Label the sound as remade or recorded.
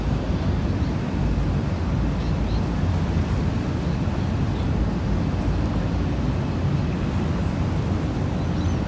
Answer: recorded